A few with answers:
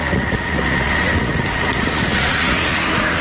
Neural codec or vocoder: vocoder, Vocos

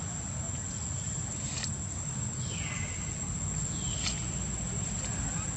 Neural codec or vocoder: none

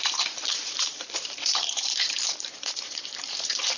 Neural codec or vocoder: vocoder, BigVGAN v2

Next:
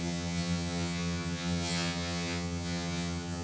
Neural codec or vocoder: vocoder, HiFi-GAN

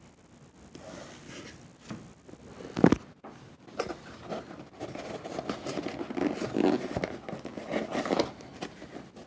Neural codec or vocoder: none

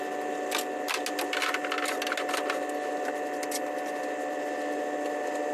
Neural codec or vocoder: none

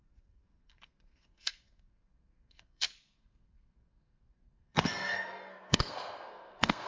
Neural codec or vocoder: codec, SNAC